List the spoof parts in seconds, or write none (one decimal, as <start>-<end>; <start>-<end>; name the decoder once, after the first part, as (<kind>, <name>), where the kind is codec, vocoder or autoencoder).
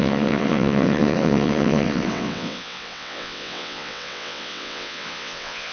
0.0-5.7 (vocoder, WaveNeXt)